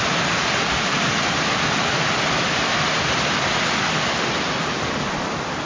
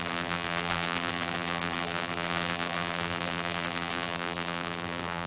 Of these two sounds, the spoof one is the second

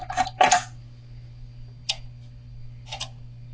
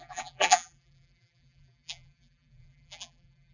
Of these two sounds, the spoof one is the second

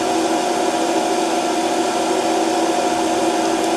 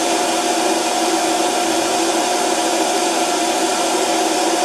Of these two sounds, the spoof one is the second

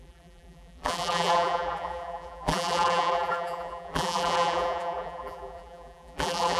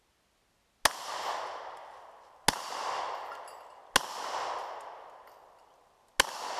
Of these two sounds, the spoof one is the first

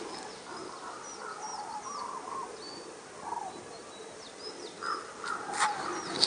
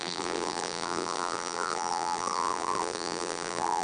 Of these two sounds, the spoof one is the second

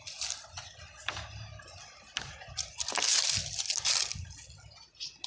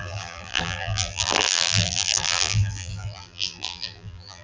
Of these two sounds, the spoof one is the second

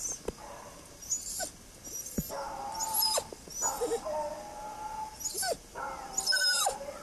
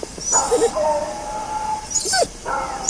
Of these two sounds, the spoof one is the second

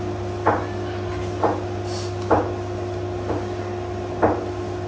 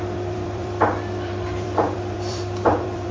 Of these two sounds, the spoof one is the second